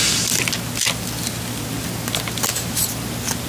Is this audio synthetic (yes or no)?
no